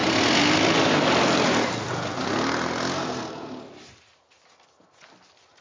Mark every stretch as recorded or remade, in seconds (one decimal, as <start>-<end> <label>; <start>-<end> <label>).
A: 0.0-5.6 recorded